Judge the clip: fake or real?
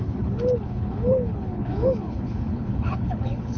fake